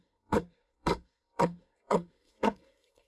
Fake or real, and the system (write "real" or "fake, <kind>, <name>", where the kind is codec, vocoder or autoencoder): fake, codec, SNAC